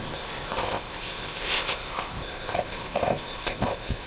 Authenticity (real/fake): fake